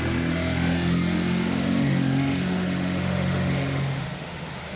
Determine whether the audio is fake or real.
fake